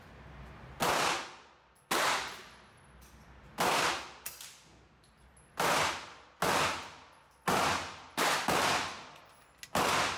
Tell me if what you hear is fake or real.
real